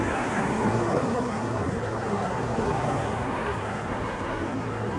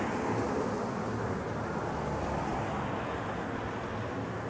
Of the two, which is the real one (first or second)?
second